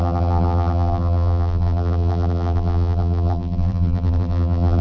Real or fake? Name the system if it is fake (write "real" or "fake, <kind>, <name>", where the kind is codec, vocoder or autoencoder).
fake, vocoder, BigVGAN v2